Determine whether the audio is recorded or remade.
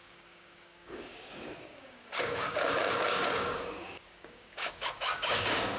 remade